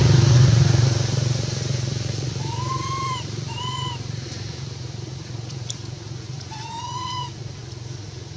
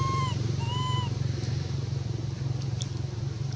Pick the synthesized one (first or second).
first